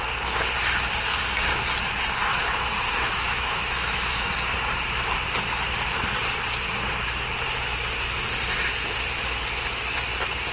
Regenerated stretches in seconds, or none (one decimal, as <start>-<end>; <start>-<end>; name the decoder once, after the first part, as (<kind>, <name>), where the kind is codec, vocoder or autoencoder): 2.3-4.3 (autoencoder, DAC-VAE)